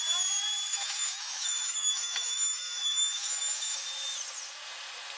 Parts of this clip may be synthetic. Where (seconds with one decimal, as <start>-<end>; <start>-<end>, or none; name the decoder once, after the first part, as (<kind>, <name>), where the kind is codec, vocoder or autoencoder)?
0.7-3.8 (autoencoder, DAC-VAE)